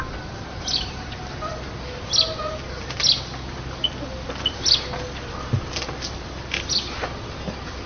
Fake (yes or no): no